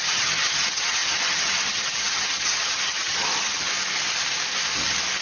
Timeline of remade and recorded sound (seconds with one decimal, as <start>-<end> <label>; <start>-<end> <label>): 0.0-3.7 remade; 3.7-5.2 recorded